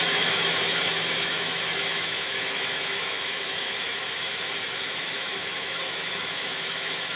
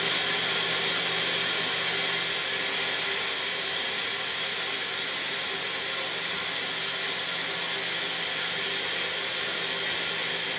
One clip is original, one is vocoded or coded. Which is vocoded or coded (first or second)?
first